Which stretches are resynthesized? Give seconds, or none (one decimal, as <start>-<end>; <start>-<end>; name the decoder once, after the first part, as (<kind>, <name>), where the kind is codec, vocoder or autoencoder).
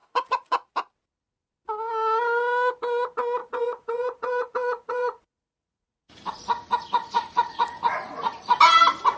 0.0-0.7 (vocoder, Vocos); 3.4-8.6